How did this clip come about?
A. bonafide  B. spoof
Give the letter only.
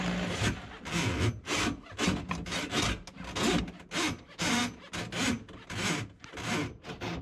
A